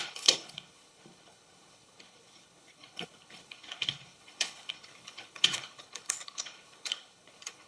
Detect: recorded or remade remade